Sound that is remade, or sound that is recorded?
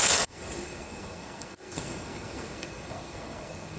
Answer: remade